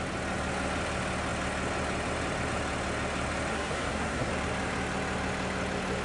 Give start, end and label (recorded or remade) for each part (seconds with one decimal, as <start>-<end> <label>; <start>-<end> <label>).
0.0-3.5 recorded; 3.5-4.3 remade; 4.3-6.0 recorded